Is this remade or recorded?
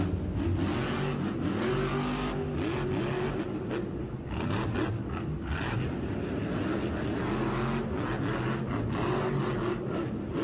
recorded